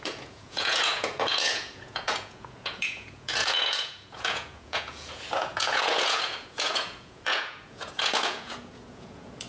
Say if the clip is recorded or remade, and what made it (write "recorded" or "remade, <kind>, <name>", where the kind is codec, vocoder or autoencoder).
remade, vocoder, Vocos